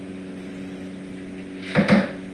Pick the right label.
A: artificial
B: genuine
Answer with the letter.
B